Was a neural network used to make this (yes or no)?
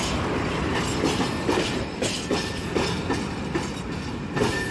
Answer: no